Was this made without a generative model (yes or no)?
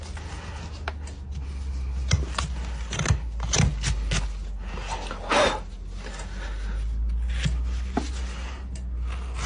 yes